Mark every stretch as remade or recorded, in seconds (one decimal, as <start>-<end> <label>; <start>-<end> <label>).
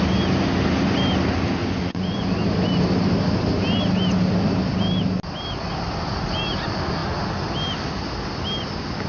0.0-1.6 recorded; 1.6-2.2 remade; 2.2-9.1 recorded